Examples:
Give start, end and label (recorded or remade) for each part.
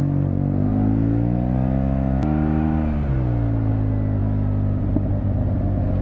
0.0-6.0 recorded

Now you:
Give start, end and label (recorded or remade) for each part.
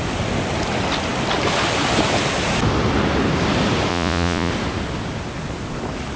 0.0-3.9 recorded; 3.9-4.5 remade; 4.5-6.2 recorded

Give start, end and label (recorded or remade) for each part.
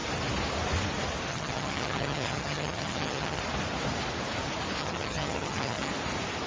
0.0-1.3 recorded; 1.3-3.4 remade; 3.4-4.8 recorded; 4.8-5.9 remade; 5.9-6.5 recorded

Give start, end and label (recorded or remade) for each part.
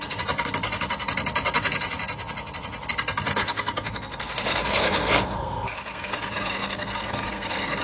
0.0-3.4 recorded; 3.4-7.8 remade